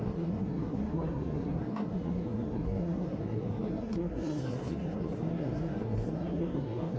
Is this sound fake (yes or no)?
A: yes